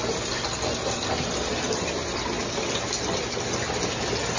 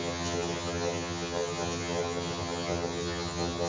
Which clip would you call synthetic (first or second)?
second